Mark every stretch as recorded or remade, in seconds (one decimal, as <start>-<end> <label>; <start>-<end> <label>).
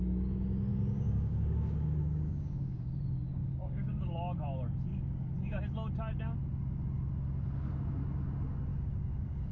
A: 0.0-0.7 recorded; 0.7-3.0 remade; 3.0-3.4 recorded; 3.4-4.0 remade; 4.0-4.9 recorded; 4.9-5.6 remade; 5.6-8.7 recorded; 8.7-9.5 remade